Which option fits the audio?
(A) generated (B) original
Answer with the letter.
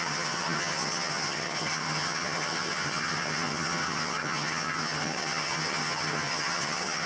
A